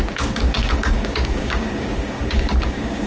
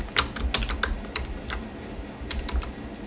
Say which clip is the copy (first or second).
first